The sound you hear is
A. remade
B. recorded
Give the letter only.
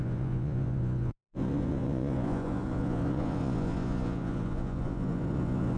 A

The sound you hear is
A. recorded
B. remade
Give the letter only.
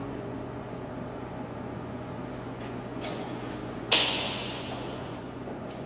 B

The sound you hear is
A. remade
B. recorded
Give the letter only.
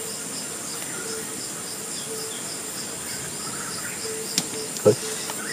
B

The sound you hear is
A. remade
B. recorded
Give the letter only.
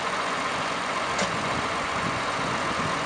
A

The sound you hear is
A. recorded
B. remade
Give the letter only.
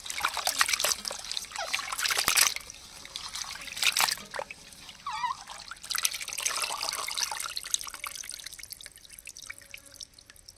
A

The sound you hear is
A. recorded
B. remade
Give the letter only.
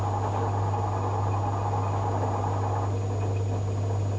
A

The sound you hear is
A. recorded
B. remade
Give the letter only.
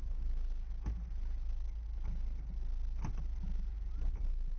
A